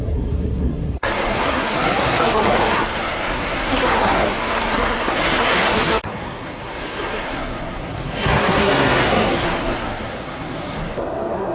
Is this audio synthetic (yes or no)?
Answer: yes